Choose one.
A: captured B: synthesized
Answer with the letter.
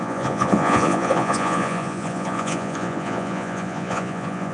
B